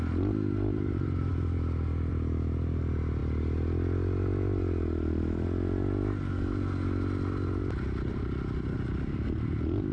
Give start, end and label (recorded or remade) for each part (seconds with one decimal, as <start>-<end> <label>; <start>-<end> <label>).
0.0-1.3 recorded; 1.3-2.1 remade; 2.1-9.9 recorded